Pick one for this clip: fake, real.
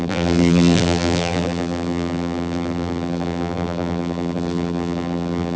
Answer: fake